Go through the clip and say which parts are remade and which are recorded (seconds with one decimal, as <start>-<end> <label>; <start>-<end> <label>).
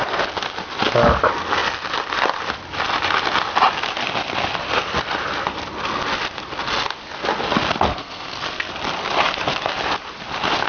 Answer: 0.0-7.9 recorded; 7.9-8.7 remade; 8.7-10.7 recorded